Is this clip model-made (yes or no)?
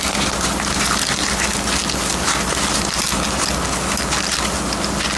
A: no